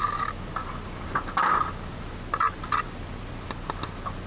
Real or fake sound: real